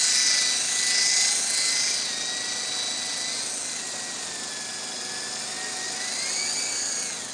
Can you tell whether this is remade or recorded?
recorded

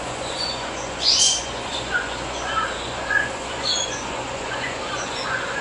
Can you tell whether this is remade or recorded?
remade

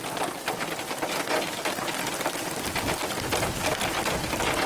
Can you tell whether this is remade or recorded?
recorded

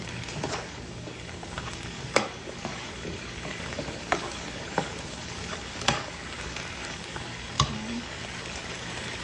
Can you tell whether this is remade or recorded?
remade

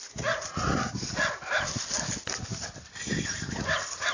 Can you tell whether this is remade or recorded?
recorded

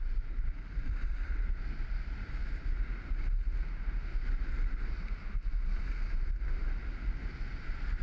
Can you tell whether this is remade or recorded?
recorded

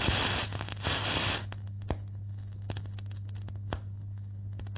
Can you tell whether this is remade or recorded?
recorded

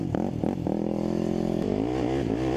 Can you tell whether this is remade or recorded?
recorded